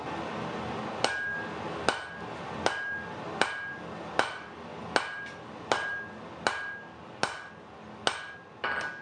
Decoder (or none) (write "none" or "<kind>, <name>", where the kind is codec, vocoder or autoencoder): none